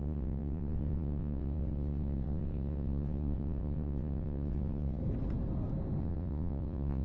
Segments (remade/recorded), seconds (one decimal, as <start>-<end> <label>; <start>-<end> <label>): 0.0-5.0 remade; 5.0-6.0 recorded; 6.0-7.0 remade